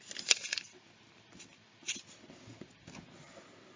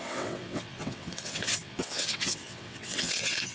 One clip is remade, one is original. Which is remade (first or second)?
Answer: second